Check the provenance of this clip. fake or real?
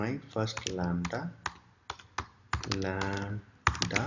real